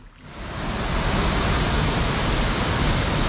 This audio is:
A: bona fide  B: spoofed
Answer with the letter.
A